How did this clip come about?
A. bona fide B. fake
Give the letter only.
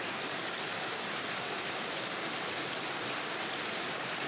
A